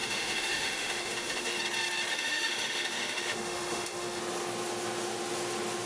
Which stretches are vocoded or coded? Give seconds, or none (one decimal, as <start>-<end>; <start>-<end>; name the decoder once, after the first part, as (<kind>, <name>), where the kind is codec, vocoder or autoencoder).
0.0-1.6 (autoencoder, DAC-VAE); 2.1-4.2